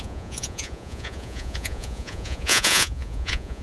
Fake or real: fake